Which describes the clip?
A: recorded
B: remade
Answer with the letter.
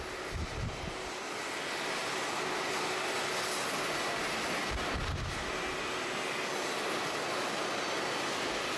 A